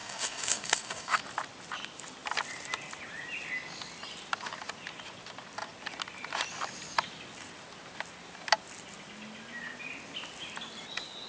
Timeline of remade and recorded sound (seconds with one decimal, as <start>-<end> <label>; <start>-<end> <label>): 0.0-1.2 remade; 1.2-11.3 recorded